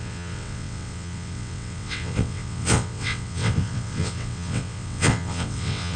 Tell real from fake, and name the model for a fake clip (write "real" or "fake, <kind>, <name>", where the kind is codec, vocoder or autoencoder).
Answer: fake, vocoder, WaveNeXt